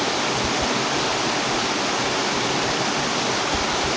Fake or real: real